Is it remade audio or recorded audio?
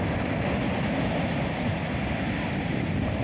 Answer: recorded